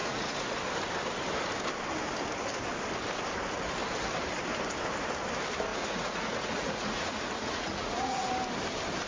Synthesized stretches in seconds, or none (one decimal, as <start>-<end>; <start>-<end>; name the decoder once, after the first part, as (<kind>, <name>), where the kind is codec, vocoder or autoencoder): 0.0-0.5 (vocoder, Vocos); 5.7-8.3